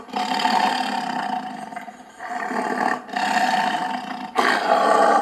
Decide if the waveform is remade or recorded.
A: recorded